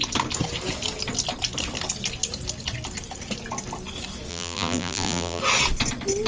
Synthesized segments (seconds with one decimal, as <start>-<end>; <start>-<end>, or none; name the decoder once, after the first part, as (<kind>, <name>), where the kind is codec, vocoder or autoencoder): 4.3-5.4 (vocoder, BigVGAN v2)